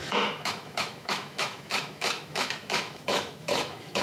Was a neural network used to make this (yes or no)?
yes